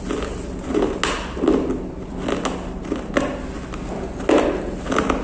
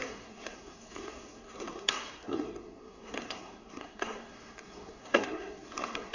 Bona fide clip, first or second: first